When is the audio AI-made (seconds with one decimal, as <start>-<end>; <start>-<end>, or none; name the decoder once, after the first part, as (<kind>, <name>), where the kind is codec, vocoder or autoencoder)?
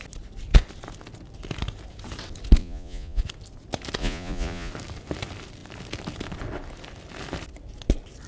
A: 2.6-3.2 (vocoder, Vocos); 4.0-4.7